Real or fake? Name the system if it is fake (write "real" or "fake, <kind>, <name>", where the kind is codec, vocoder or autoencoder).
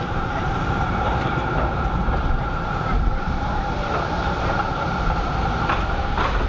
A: fake, vocoder, BigVGAN v2